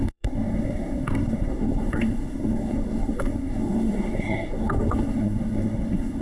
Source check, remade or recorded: remade